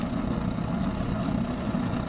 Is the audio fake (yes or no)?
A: no